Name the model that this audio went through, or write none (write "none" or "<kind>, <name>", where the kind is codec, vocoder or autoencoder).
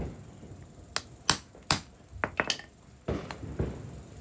none